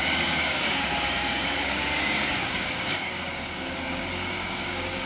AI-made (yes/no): yes